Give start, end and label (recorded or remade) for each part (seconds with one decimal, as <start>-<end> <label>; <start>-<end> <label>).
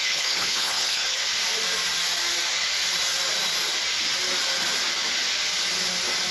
0.0-1.2 remade; 1.2-6.3 recorded